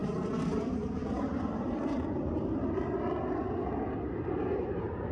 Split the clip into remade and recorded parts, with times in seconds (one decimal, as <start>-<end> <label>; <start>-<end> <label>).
0.0-2.8 remade; 2.8-5.1 recorded